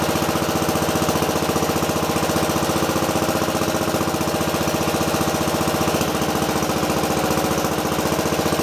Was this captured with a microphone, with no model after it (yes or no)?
yes